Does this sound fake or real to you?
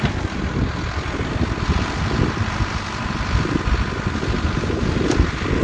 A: fake